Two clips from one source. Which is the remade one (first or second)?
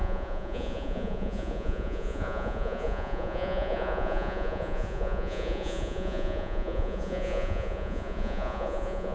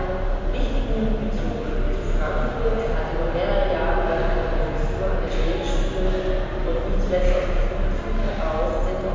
first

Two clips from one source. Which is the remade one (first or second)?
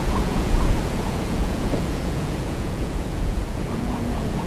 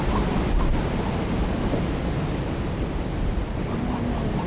first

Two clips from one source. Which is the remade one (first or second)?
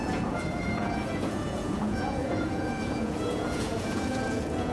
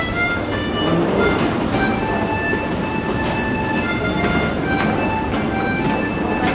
first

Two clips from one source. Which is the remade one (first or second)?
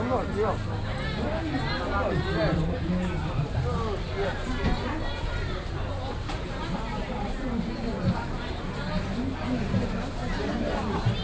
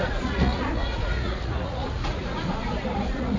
second